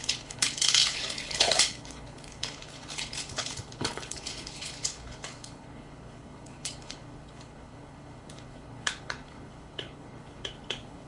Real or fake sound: fake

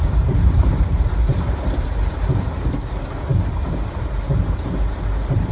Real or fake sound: fake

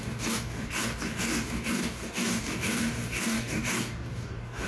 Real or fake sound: fake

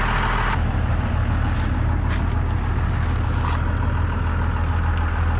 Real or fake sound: real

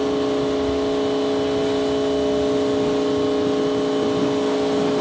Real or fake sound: real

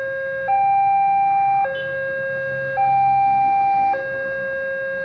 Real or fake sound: real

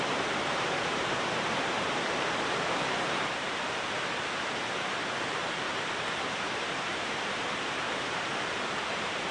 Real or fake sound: fake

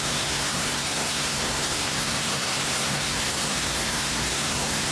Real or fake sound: fake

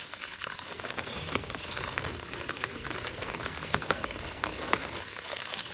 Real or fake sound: fake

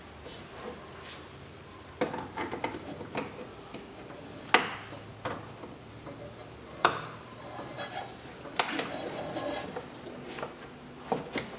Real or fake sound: real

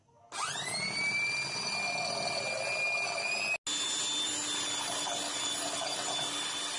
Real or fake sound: real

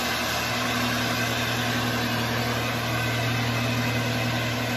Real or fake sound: real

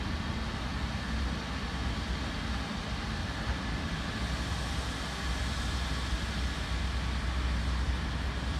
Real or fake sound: real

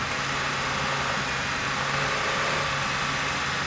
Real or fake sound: real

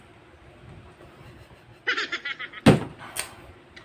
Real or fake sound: real